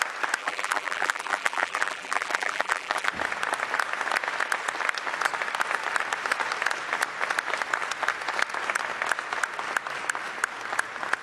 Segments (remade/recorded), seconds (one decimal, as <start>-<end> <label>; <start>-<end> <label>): 0.0-0.4 recorded; 0.4-3.1 remade; 3.1-11.2 recorded